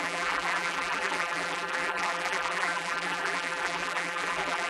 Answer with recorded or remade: remade